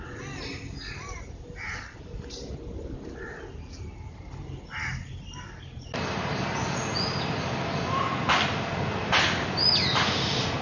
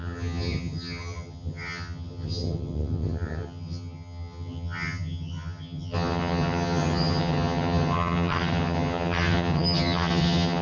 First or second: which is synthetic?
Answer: second